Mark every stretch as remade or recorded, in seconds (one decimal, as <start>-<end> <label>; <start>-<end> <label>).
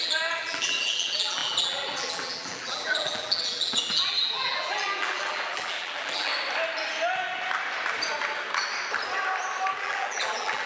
0.0-6.3 remade; 6.3-9.8 recorded; 9.8-10.7 remade